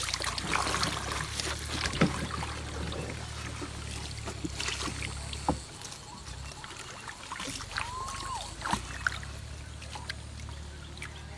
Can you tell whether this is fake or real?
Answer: real